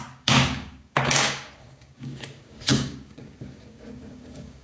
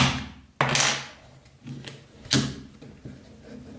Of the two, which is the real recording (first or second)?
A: second